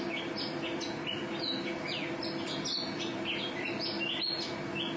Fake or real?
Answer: real